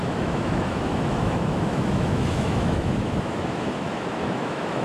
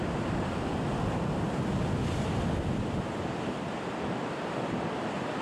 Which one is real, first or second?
second